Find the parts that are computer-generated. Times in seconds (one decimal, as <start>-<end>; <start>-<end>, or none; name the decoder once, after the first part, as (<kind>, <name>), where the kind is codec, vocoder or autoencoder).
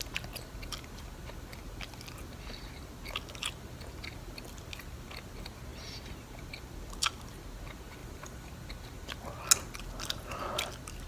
8.0-8.5 (vocoder, BigVGAN v2)